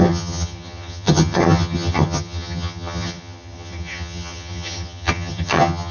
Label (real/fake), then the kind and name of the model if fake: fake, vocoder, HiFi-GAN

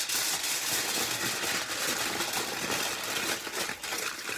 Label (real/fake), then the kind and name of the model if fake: real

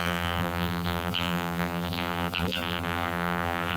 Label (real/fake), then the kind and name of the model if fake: fake, vocoder, BigVGAN v2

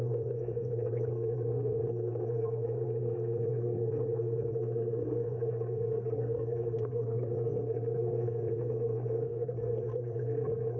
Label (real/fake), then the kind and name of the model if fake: fake, codec, SNAC